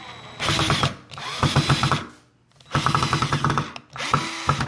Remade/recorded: recorded